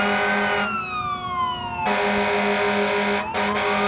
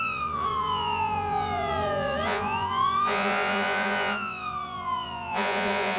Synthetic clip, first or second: second